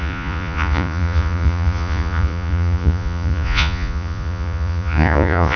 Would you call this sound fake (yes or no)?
yes